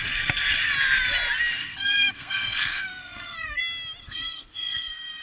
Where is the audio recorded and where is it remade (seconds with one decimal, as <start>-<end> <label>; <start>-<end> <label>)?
0.0-1.6 recorded; 1.6-3.6 remade; 3.6-4.0 recorded; 4.0-5.2 remade